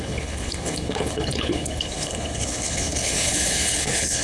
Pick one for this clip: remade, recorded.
remade